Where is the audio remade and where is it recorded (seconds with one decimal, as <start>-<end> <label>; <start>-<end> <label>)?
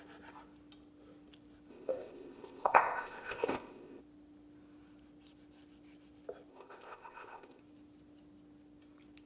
0.0-1.7 recorded; 1.7-4.0 remade; 4.0-6.5 recorded; 6.5-7.6 remade; 7.6-9.3 recorded